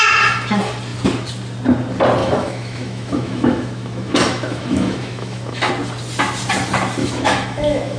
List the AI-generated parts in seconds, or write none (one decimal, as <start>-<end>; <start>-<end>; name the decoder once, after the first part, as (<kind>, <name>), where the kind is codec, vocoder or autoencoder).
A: 2.2-5.7 (autoencoder, DAC-VAE); 7.0-8.0